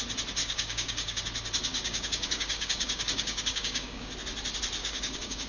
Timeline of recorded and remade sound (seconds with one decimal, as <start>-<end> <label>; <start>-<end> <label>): 0.0-0.4 recorded; 0.4-1.2 remade; 1.2-1.7 recorded; 1.7-4.1 remade; 4.1-4.8 recorded; 4.8-5.5 remade